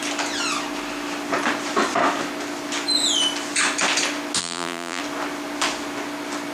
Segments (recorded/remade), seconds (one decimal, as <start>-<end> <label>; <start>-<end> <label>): 0.0-4.4 recorded; 4.4-5.0 remade; 5.0-6.5 recorded